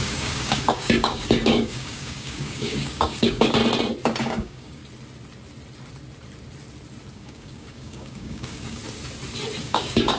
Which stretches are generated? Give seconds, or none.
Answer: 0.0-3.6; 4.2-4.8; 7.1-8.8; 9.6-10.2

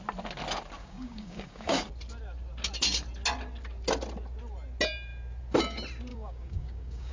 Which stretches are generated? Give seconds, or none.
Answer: 0.8-1.8; 6.1-7.1

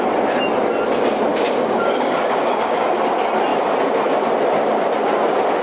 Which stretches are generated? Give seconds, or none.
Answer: 1.3-3.0

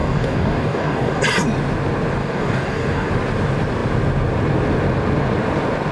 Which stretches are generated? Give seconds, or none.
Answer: 0.0-1.2; 2.2-3.1

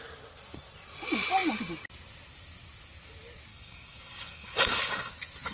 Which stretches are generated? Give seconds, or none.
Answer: 3.5-5.1

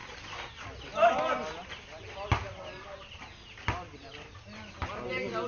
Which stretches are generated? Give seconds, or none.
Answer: none

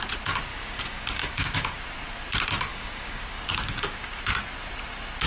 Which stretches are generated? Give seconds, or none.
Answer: 0.5-1.8; 2.7-4.2

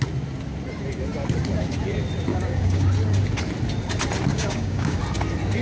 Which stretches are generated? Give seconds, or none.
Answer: 2.3-2.9; 4.3-5.0